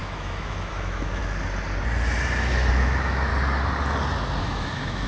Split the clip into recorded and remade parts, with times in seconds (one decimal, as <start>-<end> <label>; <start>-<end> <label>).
0.0-1.2 remade; 1.2-2.7 recorded; 2.7-3.3 remade; 3.3-4.4 recorded; 4.4-5.1 remade